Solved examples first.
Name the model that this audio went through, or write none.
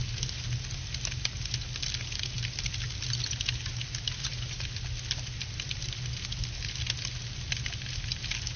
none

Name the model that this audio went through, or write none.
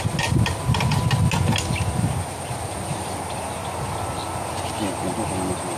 none